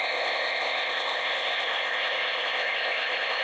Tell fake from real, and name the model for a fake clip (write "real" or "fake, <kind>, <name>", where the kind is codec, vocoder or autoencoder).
fake, codec, ZipCodec